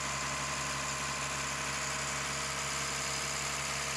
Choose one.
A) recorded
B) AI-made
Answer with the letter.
A